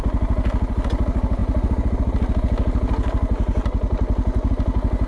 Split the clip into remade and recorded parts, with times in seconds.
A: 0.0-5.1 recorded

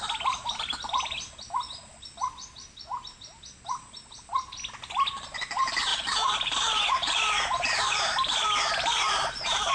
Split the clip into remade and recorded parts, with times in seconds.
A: 0.0-5.9 recorded; 5.9-9.7 remade

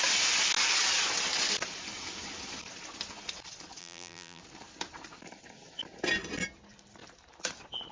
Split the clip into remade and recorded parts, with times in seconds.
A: 0.0-3.8 recorded; 3.8-4.4 remade; 4.4-7.9 recorded

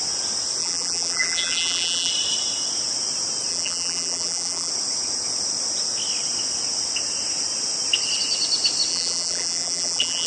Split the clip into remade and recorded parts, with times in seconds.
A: 0.0-0.6 recorded; 0.6-2.1 remade; 2.1-3.5 recorded; 3.5-4.7 remade; 4.7-8.9 recorded; 8.9-10.3 remade

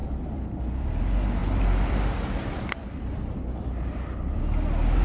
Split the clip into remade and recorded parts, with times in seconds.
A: 0.0-0.6 remade; 0.6-1.4 recorded; 1.4-4.4 remade; 4.4-5.0 recorded

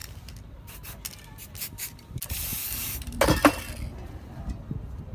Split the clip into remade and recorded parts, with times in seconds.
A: 0.0-0.7 remade; 0.7-2.5 recorded; 2.5-3.2 remade; 3.2-3.9 recorded; 3.9-4.5 remade; 4.5-5.1 recorded

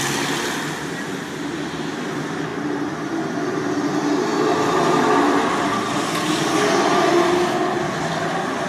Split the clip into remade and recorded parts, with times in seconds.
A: 0.0-8.7 recorded

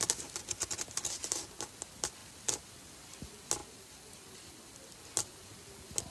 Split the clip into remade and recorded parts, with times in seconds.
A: 0.0-2.2 recorded; 2.2-3.0 remade; 3.0-3.6 recorded; 3.6-5.0 remade; 5.0-6.1 recorded